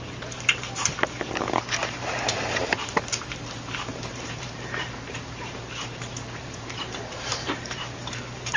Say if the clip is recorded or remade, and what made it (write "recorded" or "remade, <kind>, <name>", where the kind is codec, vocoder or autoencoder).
remade, vocoder, BigVGAN v2